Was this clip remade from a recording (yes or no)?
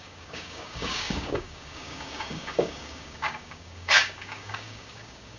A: yes